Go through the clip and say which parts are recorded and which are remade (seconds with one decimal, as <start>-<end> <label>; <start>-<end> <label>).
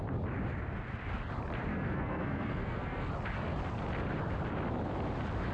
0.0-1.7 recorded; 1.7-3.1 remade; 3.1-5.5 recorded